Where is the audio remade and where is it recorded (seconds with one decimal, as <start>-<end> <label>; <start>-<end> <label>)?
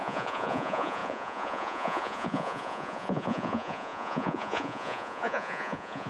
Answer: 0.0-6.1 remade